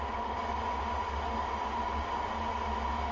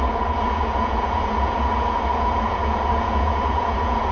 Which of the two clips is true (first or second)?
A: first